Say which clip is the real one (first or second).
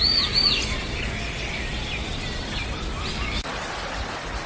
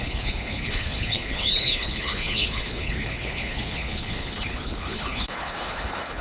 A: first